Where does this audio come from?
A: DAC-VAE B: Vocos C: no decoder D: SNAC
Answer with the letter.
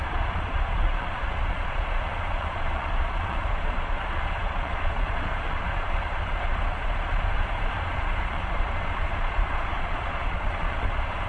B